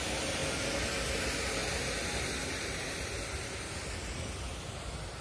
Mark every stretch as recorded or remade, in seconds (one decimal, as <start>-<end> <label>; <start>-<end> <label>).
0.0-5.2 recorded